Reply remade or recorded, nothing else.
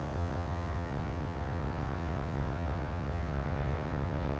remade